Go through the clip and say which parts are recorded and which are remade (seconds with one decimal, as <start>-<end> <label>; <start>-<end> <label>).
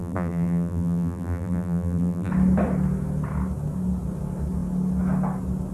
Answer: 0.0-2.3 remade; 2.3-5.7 recorded